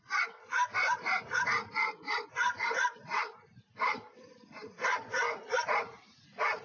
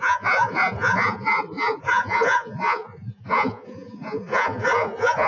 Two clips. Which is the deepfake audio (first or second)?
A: second